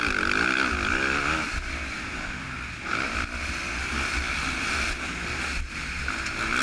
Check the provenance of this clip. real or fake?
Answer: real